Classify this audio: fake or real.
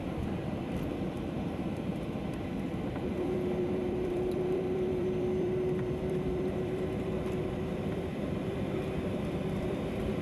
fake